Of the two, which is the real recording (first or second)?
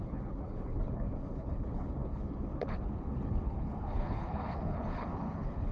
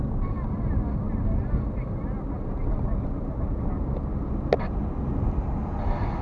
second